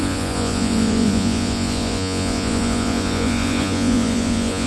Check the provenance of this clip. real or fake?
fake